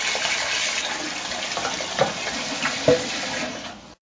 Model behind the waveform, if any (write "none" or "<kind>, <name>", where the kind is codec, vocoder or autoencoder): none